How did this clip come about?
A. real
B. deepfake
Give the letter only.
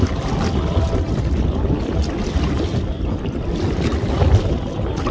A